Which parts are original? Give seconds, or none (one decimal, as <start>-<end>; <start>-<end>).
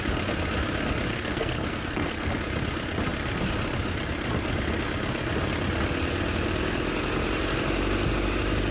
0.0-1.1; 2.3-8.7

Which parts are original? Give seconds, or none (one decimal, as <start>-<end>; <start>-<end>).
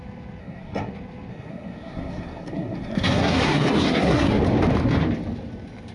0.0-0.4; 0.9-1.3; 4.4-5.9